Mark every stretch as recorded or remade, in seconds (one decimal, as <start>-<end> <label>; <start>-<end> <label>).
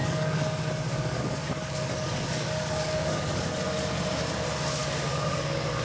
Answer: 0.0-3.5 remade; 3.5-4.8 recorded; 4.8-5.8 remade